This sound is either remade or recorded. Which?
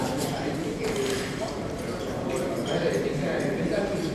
remade